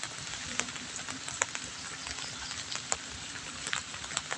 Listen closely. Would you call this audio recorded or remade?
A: recorded